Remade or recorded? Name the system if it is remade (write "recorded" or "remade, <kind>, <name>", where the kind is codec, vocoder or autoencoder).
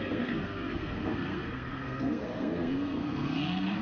remade, codec, SNAC